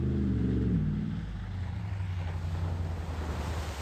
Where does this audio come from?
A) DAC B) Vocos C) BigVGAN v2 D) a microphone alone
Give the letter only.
D